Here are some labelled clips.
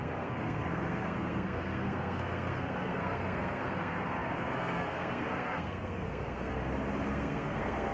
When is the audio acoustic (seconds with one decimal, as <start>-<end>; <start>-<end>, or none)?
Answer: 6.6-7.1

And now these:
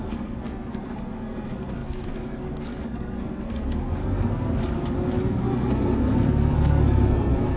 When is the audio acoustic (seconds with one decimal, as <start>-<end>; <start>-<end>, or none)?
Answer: 4.6-5.2

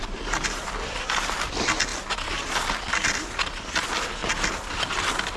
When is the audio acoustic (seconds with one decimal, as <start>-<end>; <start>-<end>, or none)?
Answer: 0.0-5.4

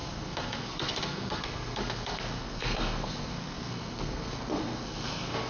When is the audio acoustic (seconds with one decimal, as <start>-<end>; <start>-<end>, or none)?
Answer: none

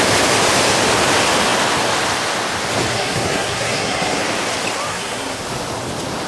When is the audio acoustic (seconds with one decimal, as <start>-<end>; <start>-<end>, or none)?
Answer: 0.0-2.9; 4.2-4.9; 5.4-6.3

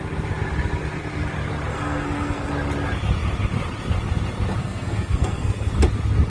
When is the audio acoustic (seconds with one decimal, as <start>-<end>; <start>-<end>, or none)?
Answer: 0.0-1.7; 2.5-4.6; 5.7-6.3

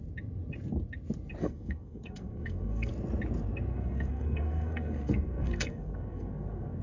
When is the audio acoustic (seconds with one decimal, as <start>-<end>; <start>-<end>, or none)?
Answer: 0.0-1.4; 2.9-3.7

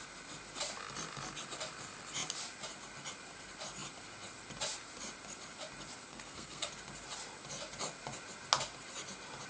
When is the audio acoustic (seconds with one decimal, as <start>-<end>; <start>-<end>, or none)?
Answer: 0.0-6.1; 6.7-9.5